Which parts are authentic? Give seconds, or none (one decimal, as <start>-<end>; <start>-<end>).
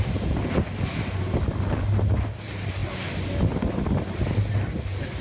0.0-5.2